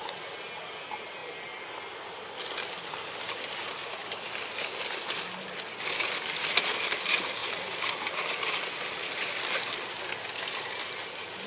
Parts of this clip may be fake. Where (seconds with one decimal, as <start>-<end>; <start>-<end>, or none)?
none